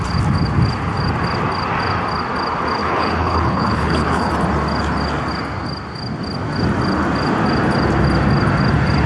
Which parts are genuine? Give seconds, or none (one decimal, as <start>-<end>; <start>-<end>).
0.0-2.8; 4.3-9.1